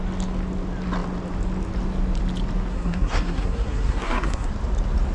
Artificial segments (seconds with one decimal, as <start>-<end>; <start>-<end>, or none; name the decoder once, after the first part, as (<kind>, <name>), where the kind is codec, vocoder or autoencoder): 2.7-4.5 (codec, SNAC)